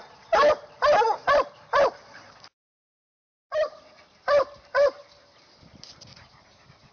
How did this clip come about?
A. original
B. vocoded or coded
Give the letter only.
A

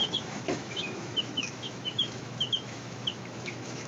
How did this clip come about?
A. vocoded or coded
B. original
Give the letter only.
A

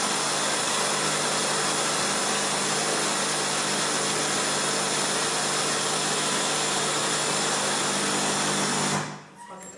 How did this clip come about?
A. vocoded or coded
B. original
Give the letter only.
B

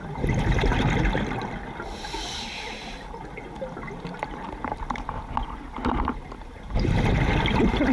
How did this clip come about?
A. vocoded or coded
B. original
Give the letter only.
B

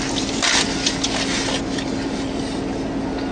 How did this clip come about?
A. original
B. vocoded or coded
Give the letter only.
A